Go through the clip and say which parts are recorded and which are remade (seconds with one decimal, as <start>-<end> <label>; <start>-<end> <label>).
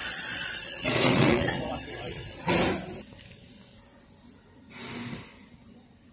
0.0-2.6 remade; 2.6-6.1 recorded